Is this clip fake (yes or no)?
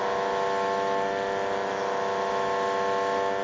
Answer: no